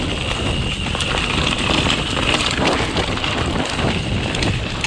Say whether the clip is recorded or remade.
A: recorded